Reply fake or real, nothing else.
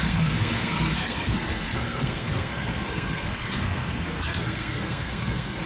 fake